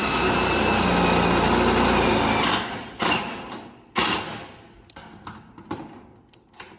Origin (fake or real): real